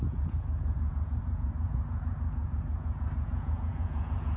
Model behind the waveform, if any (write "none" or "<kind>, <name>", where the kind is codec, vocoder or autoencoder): vocoder, Vocos